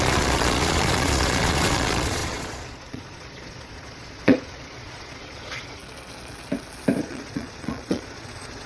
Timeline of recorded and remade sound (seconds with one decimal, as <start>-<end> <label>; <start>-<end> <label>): 0.0-5.8 remade; 5.8-7.0 recorded; 7.0-8.7 remade